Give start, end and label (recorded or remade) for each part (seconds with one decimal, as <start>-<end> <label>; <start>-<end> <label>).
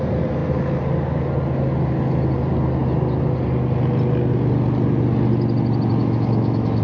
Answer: 0.0-6.0 recorded; 6.0-6.8 remade